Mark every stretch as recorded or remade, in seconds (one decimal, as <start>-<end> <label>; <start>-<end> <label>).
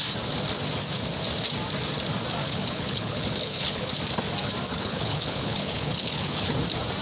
0.0-2.4 recorded; 2.4-3.9 remade; 3.9-4.7 recorded; 4.7-6.5 remade; 6.5-7.0 recorded